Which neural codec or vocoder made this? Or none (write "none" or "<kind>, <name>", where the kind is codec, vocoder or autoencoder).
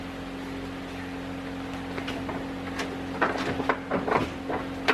none